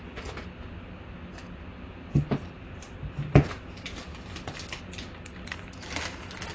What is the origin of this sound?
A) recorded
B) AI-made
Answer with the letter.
A